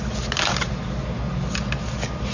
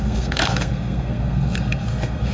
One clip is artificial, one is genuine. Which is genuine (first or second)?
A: first